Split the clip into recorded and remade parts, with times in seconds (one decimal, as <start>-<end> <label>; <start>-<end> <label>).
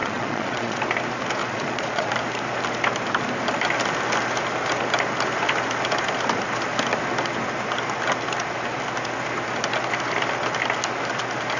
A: 0.0-0.8 remade; 0.8-1.4 recorded; 1.4-2.1 remade; 2.1-11.6 recorded